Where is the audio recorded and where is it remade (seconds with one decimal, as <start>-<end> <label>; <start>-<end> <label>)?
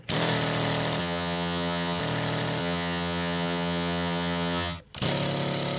0.0-1.0 recorded; 1.0-2.0 remade; 2.0-2.6 recorded; 2.6-4.8 remade; 4.8-5.8 recorded